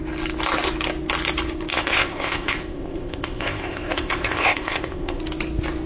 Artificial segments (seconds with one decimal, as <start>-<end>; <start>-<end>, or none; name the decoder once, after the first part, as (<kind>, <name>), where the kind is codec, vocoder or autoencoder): 1.7-5.2 (codec, ZipCodec)